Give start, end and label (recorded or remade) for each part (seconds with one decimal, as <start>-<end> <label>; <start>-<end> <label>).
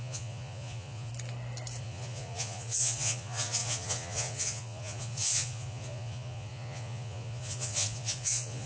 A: 0.0-1.1 remade; 1.1-1.8 recorded; 1.8-8.7 remade